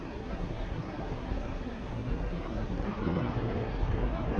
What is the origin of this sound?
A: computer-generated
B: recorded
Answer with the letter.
A